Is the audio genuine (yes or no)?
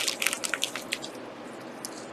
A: yes